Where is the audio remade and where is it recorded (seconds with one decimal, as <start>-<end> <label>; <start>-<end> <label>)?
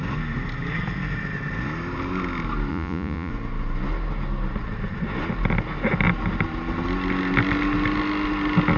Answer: 0.0-2.7 recorded; 2.7-3.3 remade; 3.3-8.8 recorded